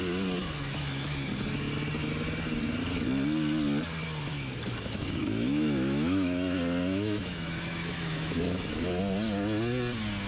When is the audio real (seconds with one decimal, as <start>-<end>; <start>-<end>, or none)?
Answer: 0.0-0.4; 1.3-4.3; 9.0-10.3